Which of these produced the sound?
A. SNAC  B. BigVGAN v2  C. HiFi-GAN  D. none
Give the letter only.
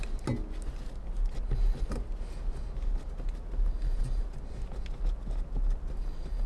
D